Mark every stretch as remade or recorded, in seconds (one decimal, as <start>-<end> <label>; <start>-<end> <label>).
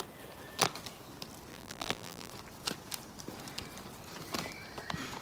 0.0-1.5 recorded; 1.5-2.3 remade; 2.3-5.2 recorded